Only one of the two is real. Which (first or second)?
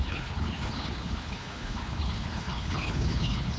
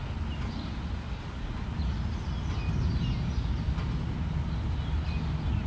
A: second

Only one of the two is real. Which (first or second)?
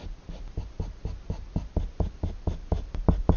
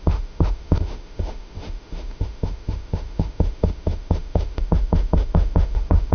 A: first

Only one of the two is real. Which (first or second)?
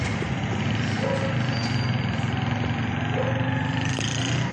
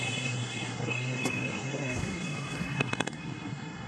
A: first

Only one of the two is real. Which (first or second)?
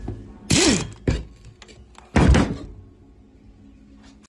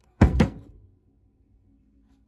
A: first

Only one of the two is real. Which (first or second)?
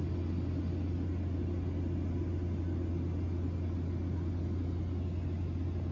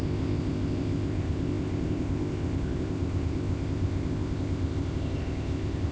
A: first